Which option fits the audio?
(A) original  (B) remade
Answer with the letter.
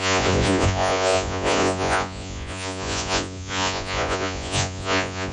B